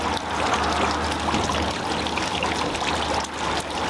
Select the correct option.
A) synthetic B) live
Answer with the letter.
B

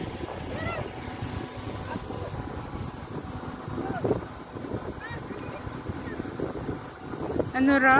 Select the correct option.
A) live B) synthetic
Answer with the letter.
A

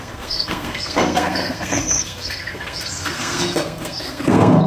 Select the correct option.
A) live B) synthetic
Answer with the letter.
B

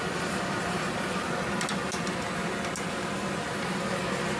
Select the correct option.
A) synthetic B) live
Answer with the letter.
B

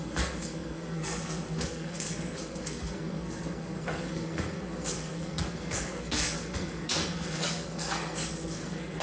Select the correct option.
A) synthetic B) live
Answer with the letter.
A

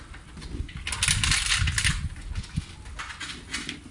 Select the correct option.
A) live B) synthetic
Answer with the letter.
A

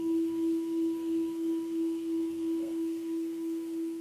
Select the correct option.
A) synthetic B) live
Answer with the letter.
A